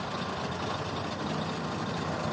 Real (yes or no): no